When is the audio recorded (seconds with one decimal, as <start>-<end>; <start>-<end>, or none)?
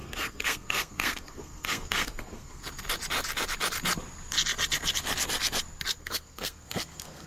2.6-6.0